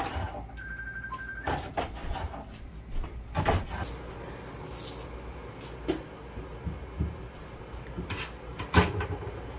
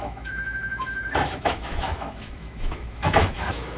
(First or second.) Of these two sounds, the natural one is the first